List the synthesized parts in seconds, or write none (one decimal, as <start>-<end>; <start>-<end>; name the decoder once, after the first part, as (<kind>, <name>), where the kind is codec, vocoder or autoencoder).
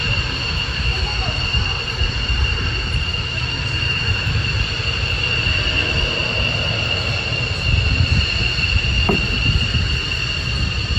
0.4-1.4 (autoencoder, DAC-VAE); 3.1-4.4